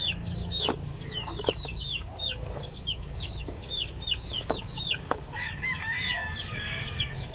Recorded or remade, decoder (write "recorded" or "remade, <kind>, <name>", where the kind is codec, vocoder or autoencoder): remade, codec, DAC